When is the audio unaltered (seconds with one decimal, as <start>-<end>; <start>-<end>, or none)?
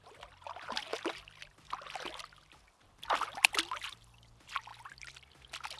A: 0.0-5.8